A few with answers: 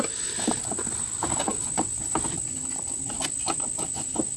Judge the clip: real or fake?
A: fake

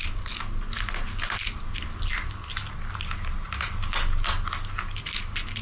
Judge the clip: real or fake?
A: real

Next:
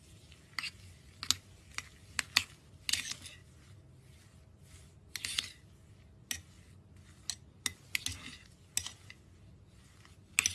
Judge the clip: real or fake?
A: real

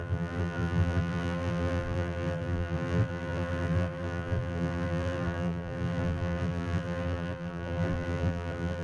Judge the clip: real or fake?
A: fake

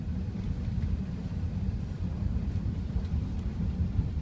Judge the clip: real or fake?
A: fake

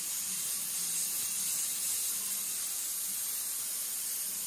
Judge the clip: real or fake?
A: real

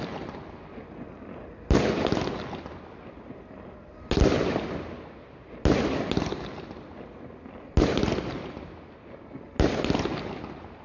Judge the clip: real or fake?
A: real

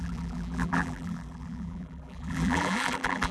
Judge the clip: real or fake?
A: fake